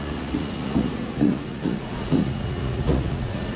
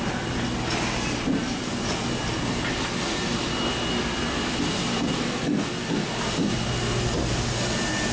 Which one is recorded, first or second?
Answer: second